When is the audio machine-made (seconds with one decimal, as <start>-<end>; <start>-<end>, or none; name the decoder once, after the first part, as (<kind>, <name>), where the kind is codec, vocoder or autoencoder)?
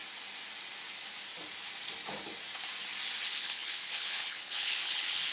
3.2-5.3 (codec, HILCodec)